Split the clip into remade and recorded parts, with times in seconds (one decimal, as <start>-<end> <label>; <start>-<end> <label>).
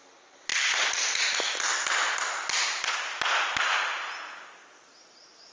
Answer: 0.0-5.5 recorded